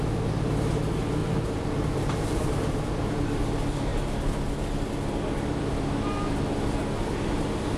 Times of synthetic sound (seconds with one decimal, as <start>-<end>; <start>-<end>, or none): 1.2-3.1